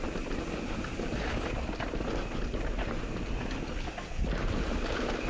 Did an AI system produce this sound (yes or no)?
no